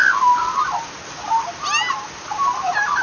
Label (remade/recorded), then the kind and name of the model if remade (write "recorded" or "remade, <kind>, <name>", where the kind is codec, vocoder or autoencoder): recorded